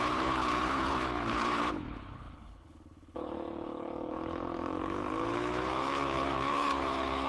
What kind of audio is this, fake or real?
fake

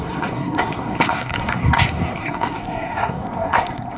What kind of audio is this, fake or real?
fake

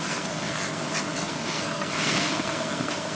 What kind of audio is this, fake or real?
fake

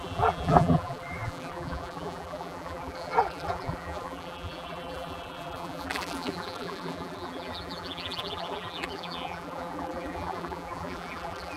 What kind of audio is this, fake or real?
fake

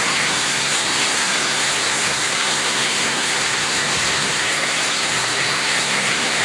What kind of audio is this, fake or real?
fake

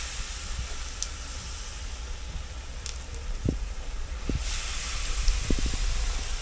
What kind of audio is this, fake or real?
fake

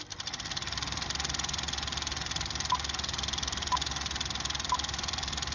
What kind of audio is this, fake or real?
real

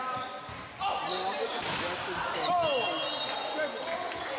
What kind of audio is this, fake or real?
real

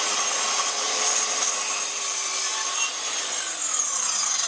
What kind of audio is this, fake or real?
real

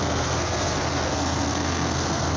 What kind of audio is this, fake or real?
fake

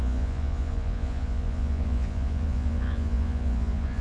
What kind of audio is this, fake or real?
fake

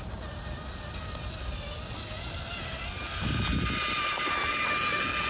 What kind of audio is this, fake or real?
real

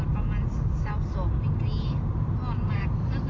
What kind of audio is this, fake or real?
real